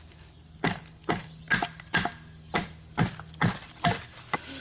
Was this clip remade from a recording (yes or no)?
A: no